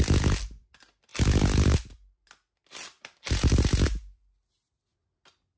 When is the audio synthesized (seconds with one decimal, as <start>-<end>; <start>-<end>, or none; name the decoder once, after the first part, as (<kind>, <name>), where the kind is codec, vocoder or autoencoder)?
none